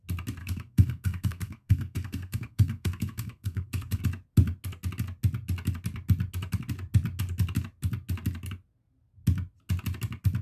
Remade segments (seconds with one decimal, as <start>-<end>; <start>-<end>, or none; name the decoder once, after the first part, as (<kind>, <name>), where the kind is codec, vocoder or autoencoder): 0.4-4.0 (codec, SNAC)